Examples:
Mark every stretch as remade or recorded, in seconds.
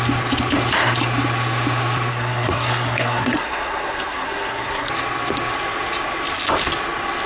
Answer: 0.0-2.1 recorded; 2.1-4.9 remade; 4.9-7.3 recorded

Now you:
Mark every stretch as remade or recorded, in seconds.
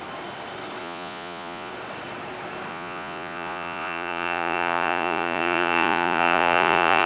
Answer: 0.0-0.8 recorded; 0.8-1.7 remade; 1.7-2.7 recorded; 2.7-7.1 remade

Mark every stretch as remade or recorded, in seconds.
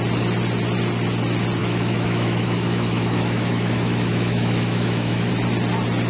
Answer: 0.0-1.6 recorded; 1.6-5.3 remade; 5.3-6.1 recorded